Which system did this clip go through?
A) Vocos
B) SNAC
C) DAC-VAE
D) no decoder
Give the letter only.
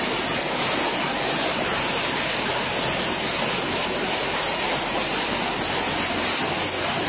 D